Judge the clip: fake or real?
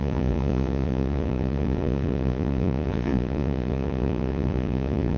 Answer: fake